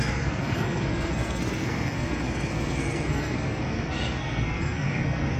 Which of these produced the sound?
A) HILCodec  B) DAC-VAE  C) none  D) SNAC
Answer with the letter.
D